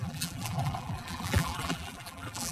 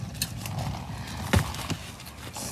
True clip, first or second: second